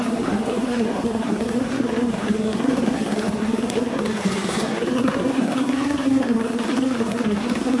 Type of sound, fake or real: fake